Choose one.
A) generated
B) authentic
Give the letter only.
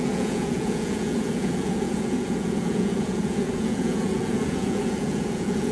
A